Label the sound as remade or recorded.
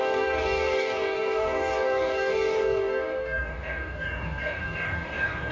remade